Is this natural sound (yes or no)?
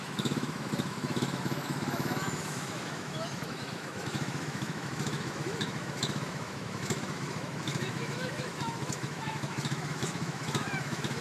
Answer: no